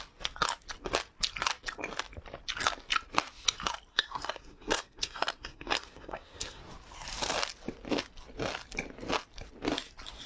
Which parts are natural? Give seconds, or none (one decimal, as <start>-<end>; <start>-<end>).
0.0-3.9; 6.6-10.3